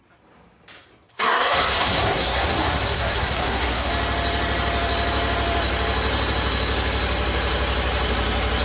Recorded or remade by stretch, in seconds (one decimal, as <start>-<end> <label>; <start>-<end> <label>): 0.0-1.1 recorded; 1.1-3.9 remade; 3.9-8.6 recorded